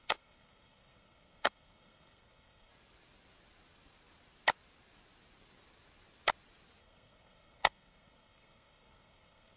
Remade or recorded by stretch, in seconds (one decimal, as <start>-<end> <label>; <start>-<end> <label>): 0.0-2.7 remade; 2.7-6.8 recorded; 6.8-9.6 remade